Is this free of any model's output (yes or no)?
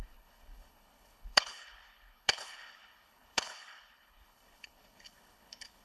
no